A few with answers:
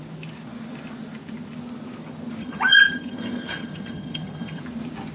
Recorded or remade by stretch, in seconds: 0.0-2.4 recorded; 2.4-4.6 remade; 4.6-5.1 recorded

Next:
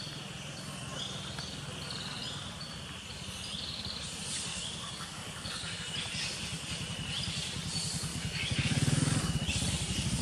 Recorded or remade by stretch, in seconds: 0.0-4.5 recorded; 4.5-5.8 remade; 5.8-8.1 recorded; 8.1-9.2 remade; 9.2-10.2 recorded

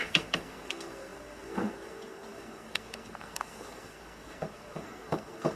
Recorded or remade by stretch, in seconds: 0.0-5.6 remade

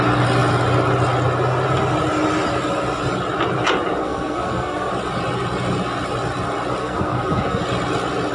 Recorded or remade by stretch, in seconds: 0.0-4.0 recorded; 4.0-4.9 remade; 4.9-6.8 recorded; 6.8-7.6 remade; 7.6-8.3 recorded